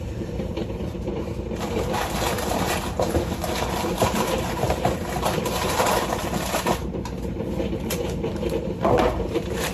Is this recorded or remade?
remade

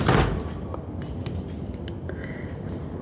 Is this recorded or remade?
recorded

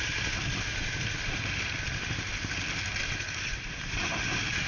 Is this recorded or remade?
recorded